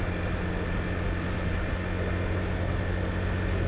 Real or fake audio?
real